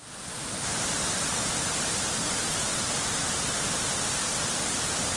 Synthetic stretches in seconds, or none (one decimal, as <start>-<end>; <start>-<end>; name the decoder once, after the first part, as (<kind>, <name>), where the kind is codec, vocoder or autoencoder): none